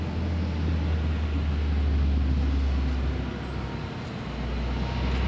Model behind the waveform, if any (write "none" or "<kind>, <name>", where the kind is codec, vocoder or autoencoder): none